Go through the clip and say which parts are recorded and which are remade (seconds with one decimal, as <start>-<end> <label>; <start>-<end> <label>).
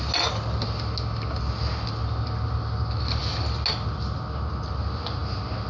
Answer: 0.0-5.7 recorded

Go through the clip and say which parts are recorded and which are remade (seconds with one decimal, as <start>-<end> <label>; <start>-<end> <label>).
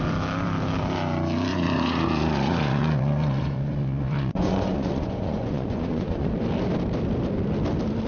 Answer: 0.0-1.5 recorded; 1.5-6.3 remade; 6.3-8.1 recorded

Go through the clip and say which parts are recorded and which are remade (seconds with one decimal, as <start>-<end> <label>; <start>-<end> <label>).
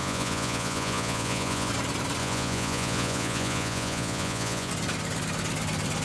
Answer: 0.0-1.7 remade; 1.7-2.2 recorded; 2.2-4.7 remade; 4.7-6.0 recorded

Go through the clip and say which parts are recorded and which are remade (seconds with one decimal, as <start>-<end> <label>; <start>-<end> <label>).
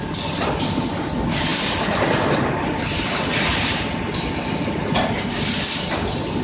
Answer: 0.0-6.4 recorded